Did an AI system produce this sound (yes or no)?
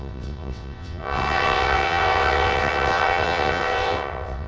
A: yes